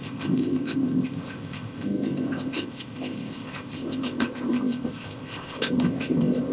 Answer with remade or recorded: remade